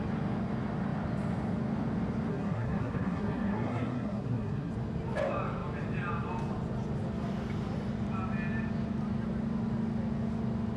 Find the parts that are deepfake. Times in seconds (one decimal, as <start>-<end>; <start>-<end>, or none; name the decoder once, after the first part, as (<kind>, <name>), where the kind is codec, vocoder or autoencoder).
2.3-4.7 (codec, SNAC)